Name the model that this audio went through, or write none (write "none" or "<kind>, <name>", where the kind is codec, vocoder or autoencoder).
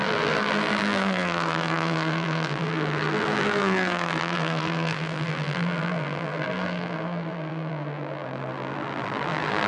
vocoder, BigVGAN v2